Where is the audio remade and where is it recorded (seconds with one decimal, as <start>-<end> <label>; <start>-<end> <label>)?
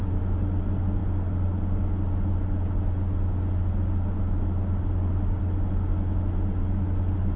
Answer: 0.0-7.4 recorded